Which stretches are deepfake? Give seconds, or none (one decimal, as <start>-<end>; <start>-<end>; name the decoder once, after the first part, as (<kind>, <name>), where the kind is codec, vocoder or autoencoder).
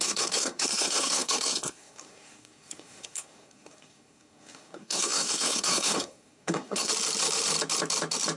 0.0-6.9 (codec, SNAC)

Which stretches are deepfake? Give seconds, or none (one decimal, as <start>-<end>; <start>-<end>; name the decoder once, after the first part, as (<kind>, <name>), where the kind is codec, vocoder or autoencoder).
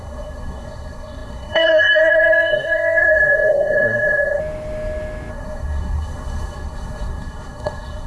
0.0-4.4 (codec, SNAC); 5.3-8.1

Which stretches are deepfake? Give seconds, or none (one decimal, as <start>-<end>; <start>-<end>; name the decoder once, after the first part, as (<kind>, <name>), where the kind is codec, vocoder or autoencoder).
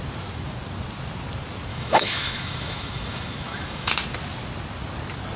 1.7-3.9 (autoencoder, DAC-VAE)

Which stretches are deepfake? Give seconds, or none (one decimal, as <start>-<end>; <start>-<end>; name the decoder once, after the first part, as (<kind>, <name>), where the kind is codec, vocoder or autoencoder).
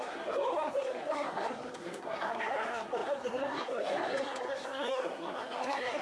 0.0-6.0 (codec, SNAC)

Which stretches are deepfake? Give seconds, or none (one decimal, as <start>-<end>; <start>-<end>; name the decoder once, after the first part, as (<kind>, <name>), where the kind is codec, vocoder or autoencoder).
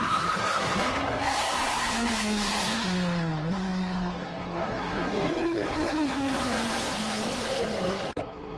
0.0-8.6 (codec, SNAC)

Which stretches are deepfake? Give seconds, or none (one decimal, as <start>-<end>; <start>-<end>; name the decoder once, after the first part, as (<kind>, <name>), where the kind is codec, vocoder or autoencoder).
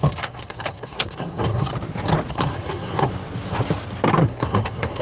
0.0-1.7 (codec, SNAC); 2.3-3.1; 4.2-5.0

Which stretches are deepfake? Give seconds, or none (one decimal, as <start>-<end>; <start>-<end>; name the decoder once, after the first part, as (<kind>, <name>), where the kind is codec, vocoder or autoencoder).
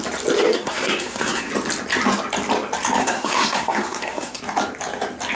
0.5-1.5 (codec, SNAC); 3.0-4.4